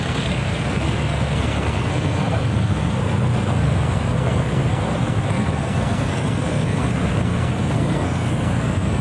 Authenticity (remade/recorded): remade